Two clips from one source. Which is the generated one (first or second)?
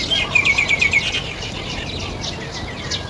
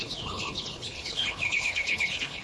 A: second